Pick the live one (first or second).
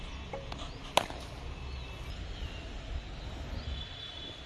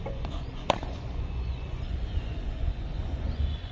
first